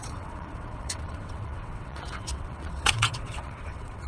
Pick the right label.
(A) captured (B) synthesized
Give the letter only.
B